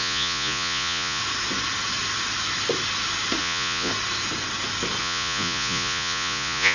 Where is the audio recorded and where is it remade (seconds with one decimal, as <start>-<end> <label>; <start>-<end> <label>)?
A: 0.0-1.2 remade; 1.2-3.4 recorded; 3.4-3.9 remade; 3.9-5.0 recorded; 5.0-6.7 remade